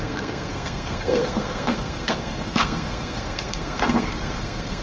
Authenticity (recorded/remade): remade